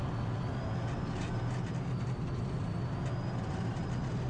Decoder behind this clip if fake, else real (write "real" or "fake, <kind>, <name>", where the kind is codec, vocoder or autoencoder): real